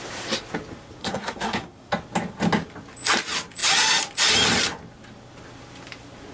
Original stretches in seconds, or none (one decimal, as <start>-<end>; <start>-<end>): 0.0-1.0; 1.9-6.3